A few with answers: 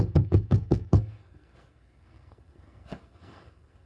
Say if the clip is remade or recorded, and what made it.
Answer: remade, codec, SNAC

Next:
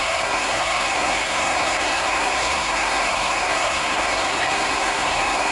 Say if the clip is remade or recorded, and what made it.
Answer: remade, codec, SNAC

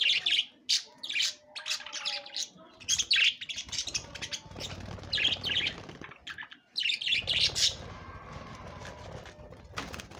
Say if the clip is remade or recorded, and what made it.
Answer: recorded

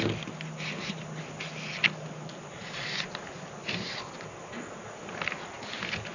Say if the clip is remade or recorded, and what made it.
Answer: recorded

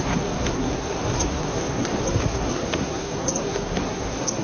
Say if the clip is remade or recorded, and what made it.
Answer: remade, codec, SNAC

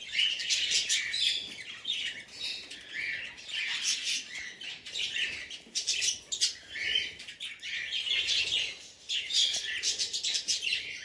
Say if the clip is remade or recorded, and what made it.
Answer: recorded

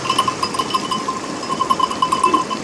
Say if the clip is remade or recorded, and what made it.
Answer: recorded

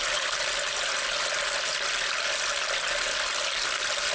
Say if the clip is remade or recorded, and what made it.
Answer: recorded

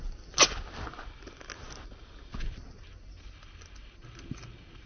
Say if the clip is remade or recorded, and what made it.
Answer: recorded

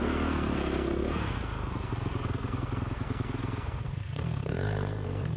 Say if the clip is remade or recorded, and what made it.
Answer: remade, codec, SNAC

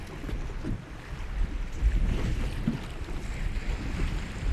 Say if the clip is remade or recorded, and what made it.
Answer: recorded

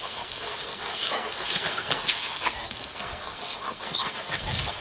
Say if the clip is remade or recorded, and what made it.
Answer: remade, codec, SNAC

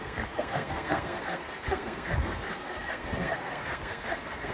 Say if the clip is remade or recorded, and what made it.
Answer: remade, codec, SNAC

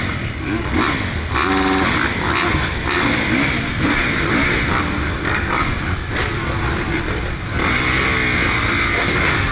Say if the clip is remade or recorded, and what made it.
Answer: recorded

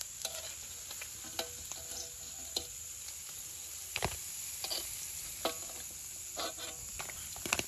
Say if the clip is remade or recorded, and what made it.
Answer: recorded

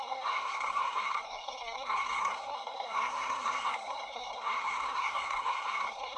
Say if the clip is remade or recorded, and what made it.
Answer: remade, codec, SNAC